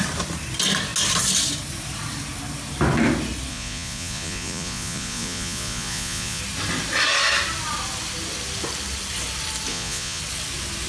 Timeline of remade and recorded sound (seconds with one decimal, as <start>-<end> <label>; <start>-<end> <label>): 0.0-3.5 recorded; 3.5-6.4 remade; 6.4-9.7 recorded; 9.7-10.2 remade; 10.2-10.9 recorded